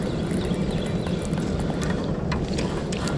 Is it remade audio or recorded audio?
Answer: recorded